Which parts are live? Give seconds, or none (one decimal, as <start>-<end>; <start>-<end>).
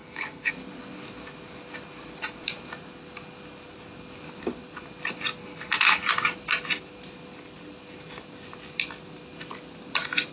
0.5-5.4; 6.0-10.3